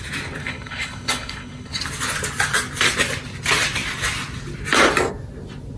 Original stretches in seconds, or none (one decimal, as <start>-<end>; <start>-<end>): 0.0-0.4; 1.8-5.8